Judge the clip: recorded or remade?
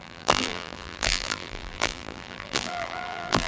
remade